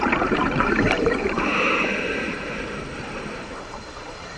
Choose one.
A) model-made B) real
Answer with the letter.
A